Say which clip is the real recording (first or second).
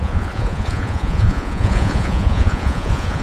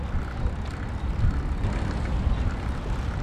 second